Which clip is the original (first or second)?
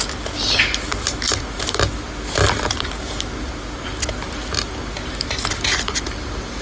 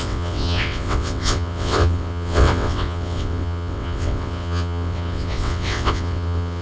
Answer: first